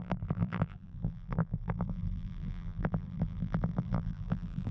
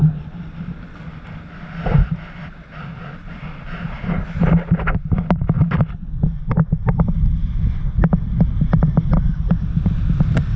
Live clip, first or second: second